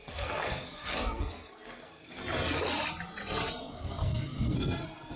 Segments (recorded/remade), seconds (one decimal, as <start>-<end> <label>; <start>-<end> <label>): 0.0-2.2 remade; 2.2-3.6 recorded; 3.6-5.2 remade